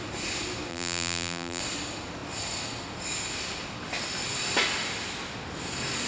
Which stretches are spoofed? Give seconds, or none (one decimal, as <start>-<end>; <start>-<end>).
0.7-1.6